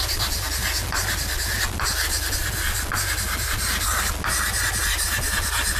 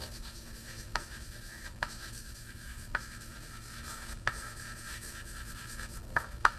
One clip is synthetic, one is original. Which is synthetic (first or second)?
second